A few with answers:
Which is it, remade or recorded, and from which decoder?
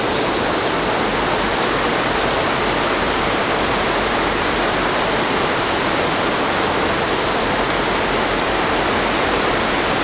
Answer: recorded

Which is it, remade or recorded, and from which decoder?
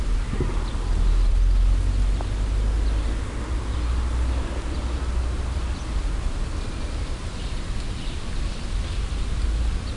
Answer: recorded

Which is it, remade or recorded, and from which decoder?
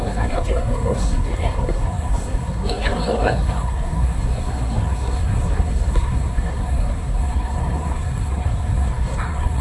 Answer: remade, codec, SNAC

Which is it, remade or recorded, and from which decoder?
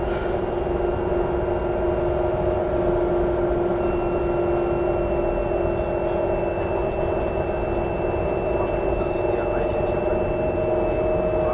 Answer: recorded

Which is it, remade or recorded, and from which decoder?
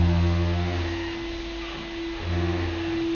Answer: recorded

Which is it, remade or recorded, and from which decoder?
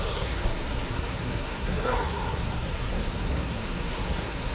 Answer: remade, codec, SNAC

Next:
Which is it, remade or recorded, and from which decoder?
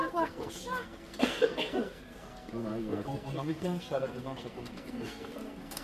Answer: remade, codec, SNAC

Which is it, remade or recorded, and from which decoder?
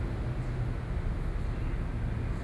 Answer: recorded